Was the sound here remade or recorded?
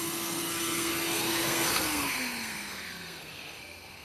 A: remade